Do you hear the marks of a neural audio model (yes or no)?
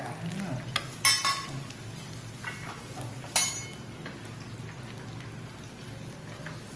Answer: no